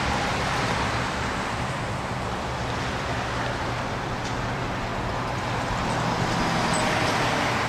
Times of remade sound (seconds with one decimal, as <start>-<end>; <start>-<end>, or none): 0.0-4.9